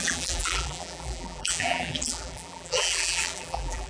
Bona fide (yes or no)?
no